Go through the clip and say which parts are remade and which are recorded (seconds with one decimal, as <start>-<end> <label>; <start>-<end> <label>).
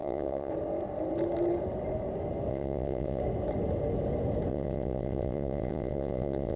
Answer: 0.0-0.5 remade; 0.5-2.5 recorded; 2.5-3.2 remade; 3.2-4.5 recorded; 4.5-6.6 remade